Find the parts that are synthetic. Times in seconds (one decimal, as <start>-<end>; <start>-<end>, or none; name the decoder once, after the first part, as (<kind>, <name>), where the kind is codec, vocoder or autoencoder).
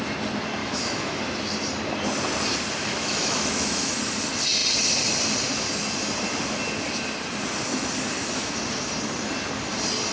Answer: 0.6-1.2 (autoencoder, DAC-VAE); 2.8-3.9